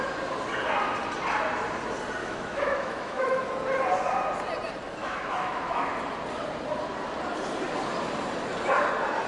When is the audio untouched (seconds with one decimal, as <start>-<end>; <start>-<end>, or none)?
0.0-2.2; 3.4-5.0; 5.9-9.3